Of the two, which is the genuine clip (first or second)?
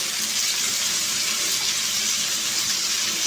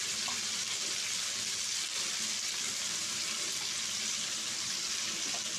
first